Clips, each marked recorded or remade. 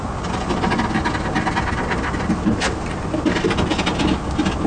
recorded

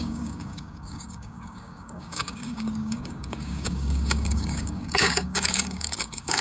remade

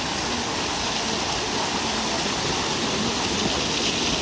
recorded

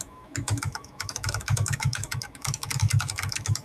remade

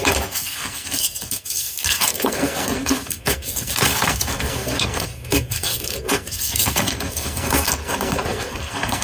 remade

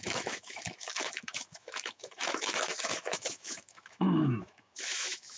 remade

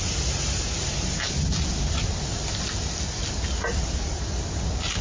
recorded